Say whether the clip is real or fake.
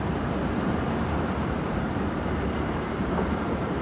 fake